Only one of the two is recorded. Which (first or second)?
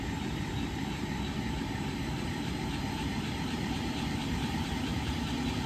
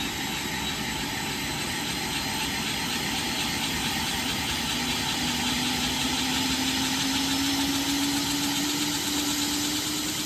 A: second